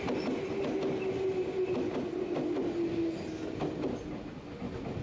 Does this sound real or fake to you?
real